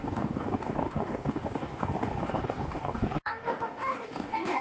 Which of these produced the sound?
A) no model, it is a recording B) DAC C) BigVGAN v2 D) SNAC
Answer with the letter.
B